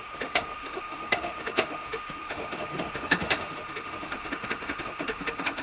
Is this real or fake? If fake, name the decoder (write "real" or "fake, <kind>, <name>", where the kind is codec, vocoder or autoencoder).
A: fake, autoencoder, DAC-VAE